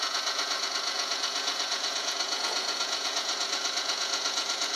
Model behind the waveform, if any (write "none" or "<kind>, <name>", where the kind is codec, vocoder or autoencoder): vocoder, Vocos